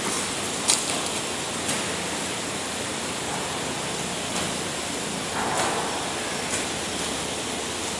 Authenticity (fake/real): real